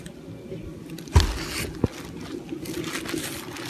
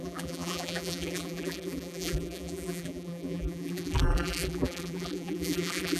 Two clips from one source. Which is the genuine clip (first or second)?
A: first